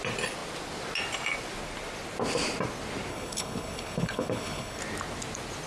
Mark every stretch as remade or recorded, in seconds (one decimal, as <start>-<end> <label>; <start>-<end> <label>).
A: 0.0-3.1 recorded; 3.1-4.8 remade; 4.8-5.7 recorded